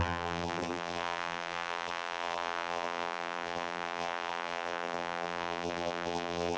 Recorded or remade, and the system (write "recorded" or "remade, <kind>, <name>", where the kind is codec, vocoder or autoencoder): remade, vocoder, BigVGAN v2